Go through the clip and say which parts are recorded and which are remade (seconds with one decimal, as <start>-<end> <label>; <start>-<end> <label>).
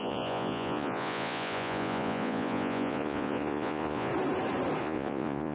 0.0-4.1 remade; 4.1-4.8 recorded; 4.8-5.5 remade